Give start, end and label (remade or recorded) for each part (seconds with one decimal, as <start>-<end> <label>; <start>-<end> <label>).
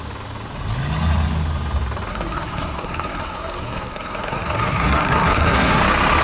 0.0-2.1 recorded; 2.1-5.8 remade; 5.8-6.2 recorded